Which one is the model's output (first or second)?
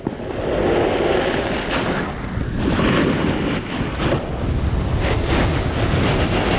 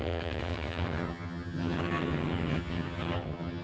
second